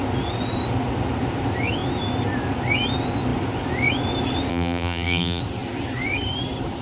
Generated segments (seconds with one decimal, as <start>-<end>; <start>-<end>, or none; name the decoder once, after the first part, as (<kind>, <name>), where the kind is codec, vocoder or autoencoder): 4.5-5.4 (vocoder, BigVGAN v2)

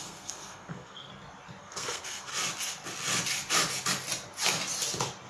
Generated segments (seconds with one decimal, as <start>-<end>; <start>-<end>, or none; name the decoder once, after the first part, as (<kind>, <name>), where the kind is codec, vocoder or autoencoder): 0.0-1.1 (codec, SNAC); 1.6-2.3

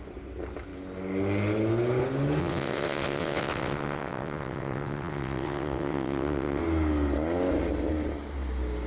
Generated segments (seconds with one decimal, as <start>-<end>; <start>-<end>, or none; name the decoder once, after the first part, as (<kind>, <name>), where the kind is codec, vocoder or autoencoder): 2.4-6.6 (vocoder, WaveNeXt)